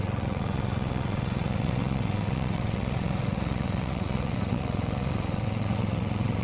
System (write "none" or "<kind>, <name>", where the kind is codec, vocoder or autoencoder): vocoder, WaveNeXt